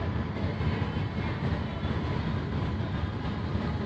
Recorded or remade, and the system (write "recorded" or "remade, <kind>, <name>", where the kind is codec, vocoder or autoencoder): recorded